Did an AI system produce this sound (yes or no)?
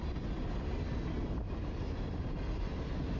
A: no